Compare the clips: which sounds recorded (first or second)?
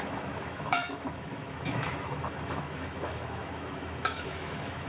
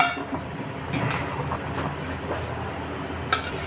second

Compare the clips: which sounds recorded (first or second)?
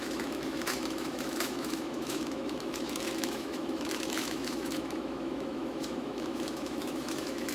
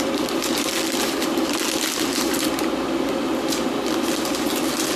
second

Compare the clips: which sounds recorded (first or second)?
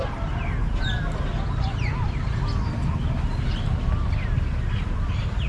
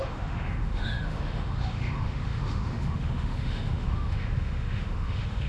first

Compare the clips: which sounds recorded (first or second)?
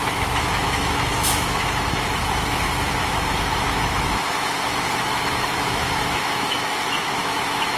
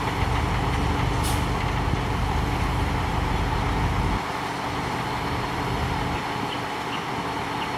second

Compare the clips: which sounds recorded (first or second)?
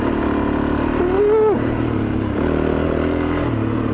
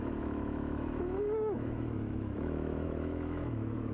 first